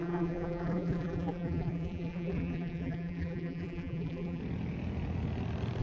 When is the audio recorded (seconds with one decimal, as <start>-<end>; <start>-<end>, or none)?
4.4-5.8